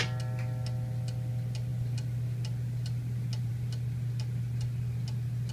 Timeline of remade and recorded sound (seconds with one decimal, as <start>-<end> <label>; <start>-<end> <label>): 0.0-5.5 recorded